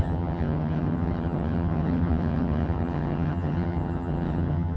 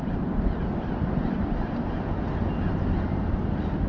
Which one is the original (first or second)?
second